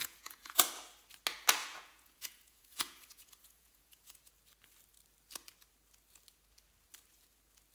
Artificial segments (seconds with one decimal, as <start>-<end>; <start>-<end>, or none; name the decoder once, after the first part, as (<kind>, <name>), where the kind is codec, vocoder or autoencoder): 0.0-0.6 (vocoder, Vocos); 1.6-4.3